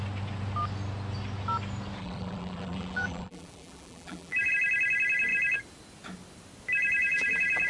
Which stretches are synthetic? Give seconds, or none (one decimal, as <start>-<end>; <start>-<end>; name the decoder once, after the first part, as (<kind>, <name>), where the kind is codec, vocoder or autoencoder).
2.0-4.5 (vocoder, BigVGAN v2); 7.0-7.7